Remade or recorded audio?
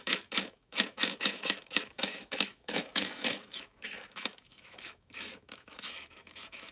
remade